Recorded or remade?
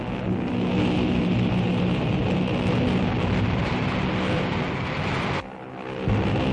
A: recorded